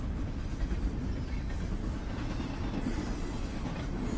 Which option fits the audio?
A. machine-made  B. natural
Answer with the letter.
B